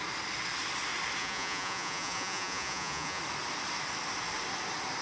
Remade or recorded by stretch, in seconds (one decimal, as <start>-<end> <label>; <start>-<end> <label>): 0.0-1.2 recorded; 1.2-3.2 remade; 3.2-5.0 recorded